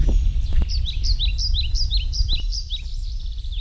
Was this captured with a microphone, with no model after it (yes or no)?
yes